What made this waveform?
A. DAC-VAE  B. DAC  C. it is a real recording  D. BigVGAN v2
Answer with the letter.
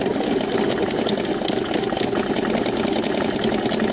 C